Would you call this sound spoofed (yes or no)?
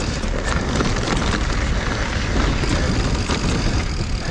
no